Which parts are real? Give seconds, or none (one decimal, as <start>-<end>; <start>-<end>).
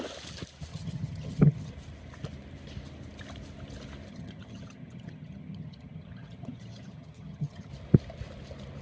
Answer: 0.0-0.7; 1.7-4.1; 7.7-8.8